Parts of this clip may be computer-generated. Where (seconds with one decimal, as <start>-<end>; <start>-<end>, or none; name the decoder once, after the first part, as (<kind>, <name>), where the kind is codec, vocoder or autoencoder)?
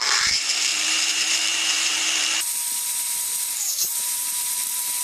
0.0-5.0 (vocoder, BigVGAN v2)